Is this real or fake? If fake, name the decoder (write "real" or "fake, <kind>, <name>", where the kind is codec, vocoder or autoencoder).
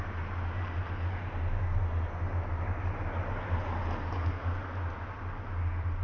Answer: real